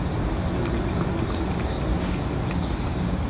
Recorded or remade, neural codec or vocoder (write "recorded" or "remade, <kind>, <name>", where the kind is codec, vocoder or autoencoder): recorded